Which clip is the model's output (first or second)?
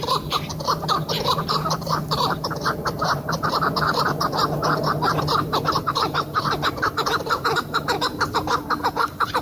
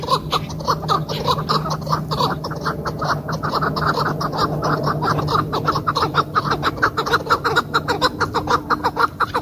first